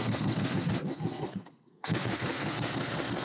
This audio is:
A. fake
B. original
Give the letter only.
A